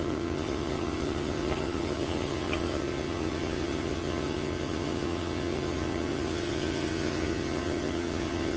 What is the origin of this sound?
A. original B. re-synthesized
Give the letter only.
B